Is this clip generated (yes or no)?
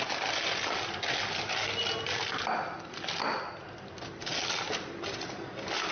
no